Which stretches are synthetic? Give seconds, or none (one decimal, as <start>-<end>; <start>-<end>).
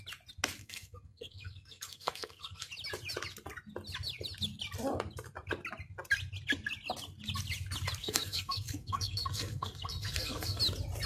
0.6-2.7; 8.0-10.6